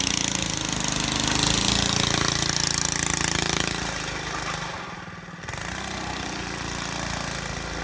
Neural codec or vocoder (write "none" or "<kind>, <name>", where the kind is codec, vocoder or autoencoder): none